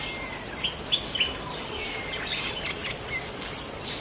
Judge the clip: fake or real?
real